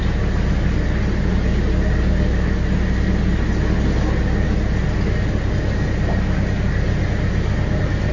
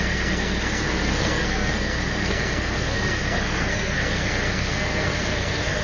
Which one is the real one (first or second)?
first